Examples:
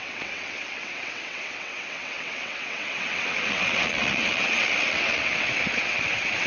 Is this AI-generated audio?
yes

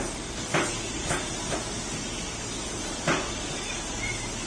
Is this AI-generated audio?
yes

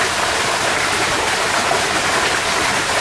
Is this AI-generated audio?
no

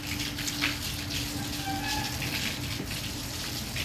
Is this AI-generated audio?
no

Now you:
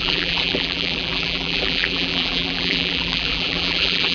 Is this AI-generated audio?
yes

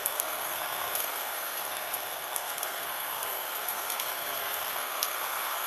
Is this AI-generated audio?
yes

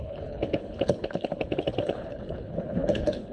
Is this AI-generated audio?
yes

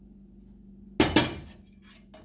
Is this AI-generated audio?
no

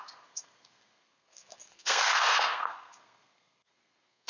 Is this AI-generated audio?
yes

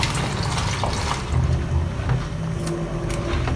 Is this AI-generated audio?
no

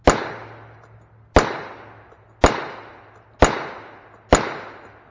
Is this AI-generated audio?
no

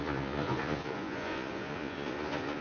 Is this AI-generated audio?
yes